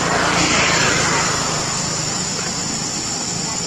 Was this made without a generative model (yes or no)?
yes